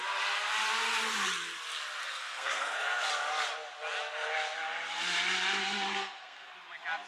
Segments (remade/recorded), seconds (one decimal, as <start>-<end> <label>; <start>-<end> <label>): 0.0-2.0 recorded; 2.0-3.1 remade; 3.1-5.6 recorded; 5.6-6.5 remade; 6.5-7.1 recorded